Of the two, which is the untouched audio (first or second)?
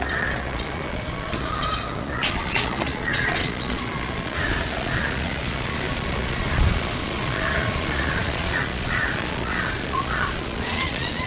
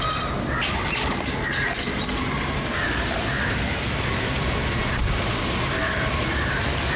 second